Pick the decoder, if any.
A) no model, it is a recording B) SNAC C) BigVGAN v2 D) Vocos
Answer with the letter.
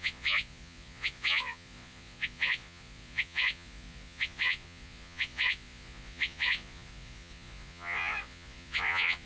D